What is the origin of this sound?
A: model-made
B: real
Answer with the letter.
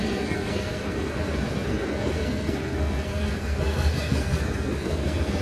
A